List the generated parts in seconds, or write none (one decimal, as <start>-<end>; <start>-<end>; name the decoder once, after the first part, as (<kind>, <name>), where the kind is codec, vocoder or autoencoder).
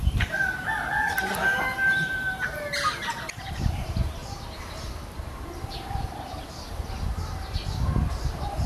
0.0-0.7 (vocoder, BigVGAN v2); 1.6-7.6; 8.1-8.7